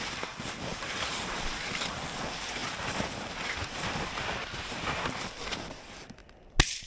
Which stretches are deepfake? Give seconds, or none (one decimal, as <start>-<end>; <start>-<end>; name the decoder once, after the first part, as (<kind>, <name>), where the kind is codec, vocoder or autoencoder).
0.7-2.2 (vocoder, BigVGAN v2)